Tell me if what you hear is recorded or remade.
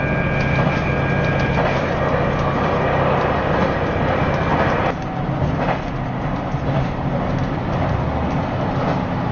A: recorded